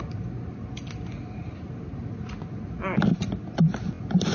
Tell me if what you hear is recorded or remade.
recorded